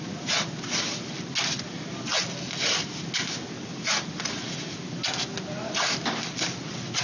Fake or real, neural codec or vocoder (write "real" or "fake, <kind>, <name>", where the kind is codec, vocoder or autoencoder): real